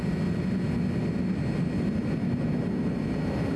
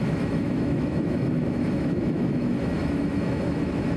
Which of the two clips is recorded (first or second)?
first